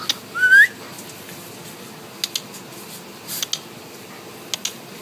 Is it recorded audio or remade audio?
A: recorded